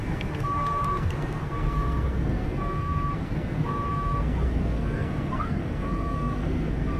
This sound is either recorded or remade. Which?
remade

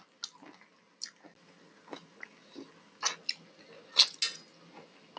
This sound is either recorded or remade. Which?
recorded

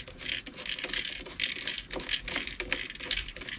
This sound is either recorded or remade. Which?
recorded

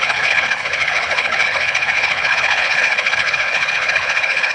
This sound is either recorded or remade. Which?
remade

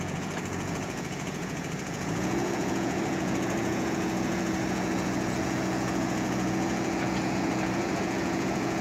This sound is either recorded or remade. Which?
remade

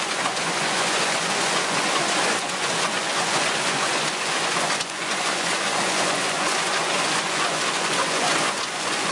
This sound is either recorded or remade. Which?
remade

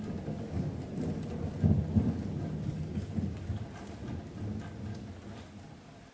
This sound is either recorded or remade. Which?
recorded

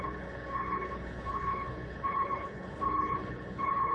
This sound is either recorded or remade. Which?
remade